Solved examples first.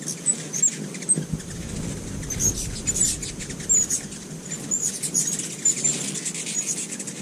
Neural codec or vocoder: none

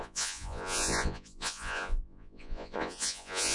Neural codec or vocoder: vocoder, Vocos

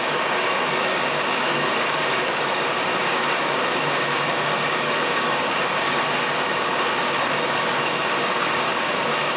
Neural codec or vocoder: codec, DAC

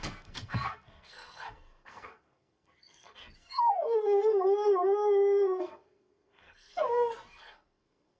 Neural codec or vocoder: codec, SNAC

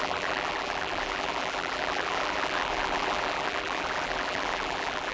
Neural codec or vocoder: vocoder, BigVGAN v2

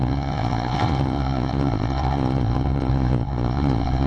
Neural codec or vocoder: vocoder, Vocos